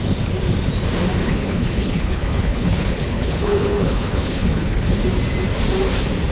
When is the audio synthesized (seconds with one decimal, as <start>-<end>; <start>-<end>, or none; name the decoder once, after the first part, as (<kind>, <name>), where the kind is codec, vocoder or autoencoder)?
1.2-5.0 (codec, HILCodec)